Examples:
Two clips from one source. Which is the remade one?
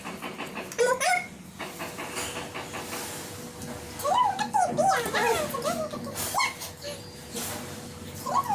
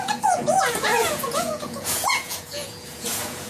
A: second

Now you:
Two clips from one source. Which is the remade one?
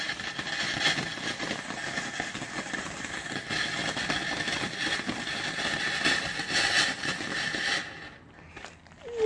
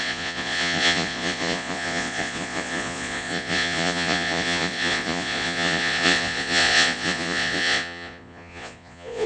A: second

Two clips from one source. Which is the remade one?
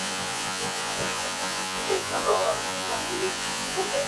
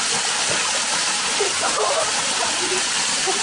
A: first